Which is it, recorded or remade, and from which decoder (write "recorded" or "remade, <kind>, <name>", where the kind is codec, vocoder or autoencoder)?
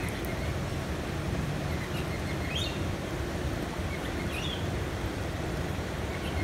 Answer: recorded